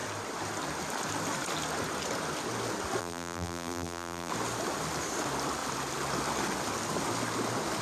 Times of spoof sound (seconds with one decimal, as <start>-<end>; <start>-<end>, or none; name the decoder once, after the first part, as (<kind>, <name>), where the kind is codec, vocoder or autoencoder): 3.0-4.3 (vocoder, BigVGAN v2)